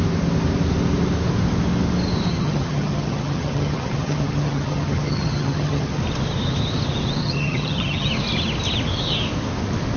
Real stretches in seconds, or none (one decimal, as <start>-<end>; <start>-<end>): 0.0-2.3; 6.0-7.2; 8.1-10.0